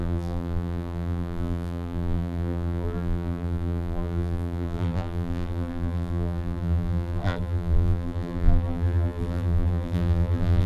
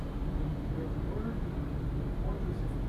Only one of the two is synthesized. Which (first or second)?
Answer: first